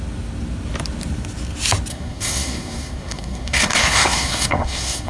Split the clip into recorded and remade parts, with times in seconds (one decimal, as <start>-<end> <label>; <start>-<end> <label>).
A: 0.0-1.9 recorded; 1.9-5.1 remade